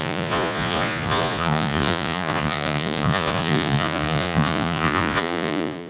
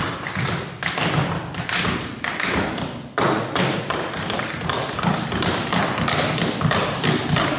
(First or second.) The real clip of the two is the second